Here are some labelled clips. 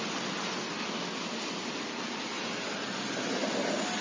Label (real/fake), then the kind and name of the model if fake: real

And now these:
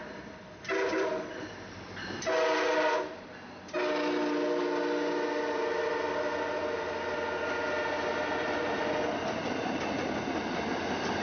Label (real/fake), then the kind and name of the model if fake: real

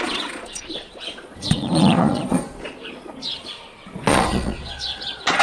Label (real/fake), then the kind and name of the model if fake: fake, vocoder, Vocos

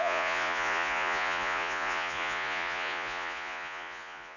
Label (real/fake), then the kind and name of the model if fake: fake, vocoder, Vocos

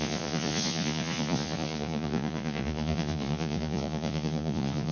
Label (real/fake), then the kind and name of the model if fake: fake, vocoder, Vocos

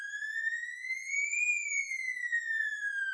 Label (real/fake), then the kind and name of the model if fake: fake, vocoder, Vocos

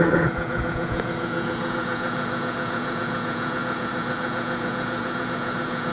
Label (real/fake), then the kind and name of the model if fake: fake, vocoder, Vocos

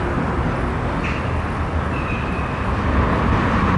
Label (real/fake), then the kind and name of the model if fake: real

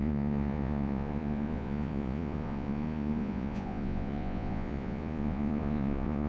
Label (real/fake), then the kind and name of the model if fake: fake, vocoder, Vocos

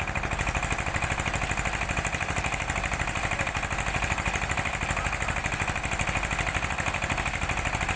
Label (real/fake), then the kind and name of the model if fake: real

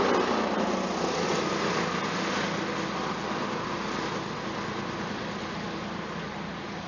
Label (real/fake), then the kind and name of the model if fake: real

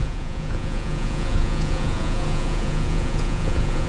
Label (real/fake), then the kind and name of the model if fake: fake, vocoder, Vocos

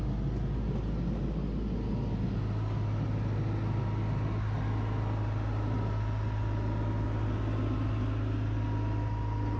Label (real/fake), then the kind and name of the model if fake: real